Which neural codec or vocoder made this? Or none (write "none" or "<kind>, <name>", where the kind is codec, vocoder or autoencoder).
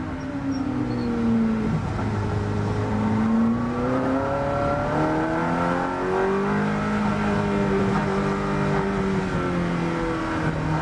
none